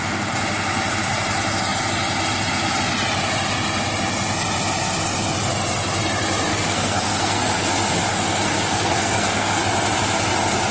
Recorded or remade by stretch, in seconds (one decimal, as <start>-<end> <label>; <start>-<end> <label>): 0.0-6.5 recorded; 6.5-7.6 remade; 7.6-8.1 recorded; 8.1-9.6 remade; 9.6-10.7 recorded